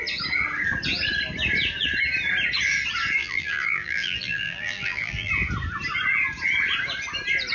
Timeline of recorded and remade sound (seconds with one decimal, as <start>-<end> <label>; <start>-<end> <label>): 0.0-3.2 recorded; 3.2-5.3 remade; 5.3-7.5 recorded